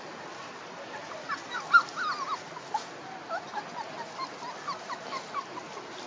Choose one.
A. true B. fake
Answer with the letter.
A